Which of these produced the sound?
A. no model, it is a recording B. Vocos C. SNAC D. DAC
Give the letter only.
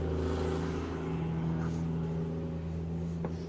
A